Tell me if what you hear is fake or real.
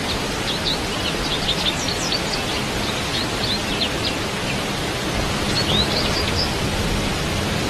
real